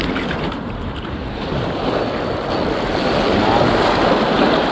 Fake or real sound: real